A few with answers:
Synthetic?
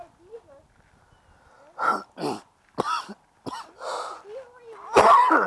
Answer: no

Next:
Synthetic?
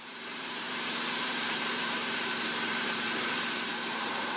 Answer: yes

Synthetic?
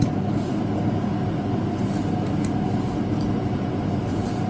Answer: yes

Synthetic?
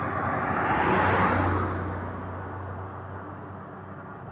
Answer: no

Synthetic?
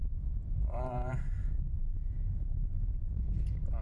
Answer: yes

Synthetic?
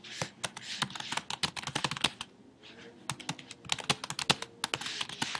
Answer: no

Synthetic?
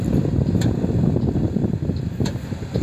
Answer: no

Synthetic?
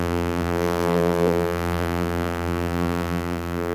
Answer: yes